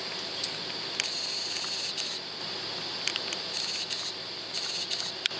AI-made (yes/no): no